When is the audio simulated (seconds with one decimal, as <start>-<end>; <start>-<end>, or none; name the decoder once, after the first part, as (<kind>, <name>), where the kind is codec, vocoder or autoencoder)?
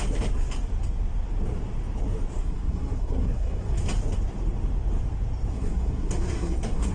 2.4-3.8 (codec, SNAC); 5.5-6.9